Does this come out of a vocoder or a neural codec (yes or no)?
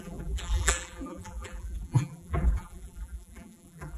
yes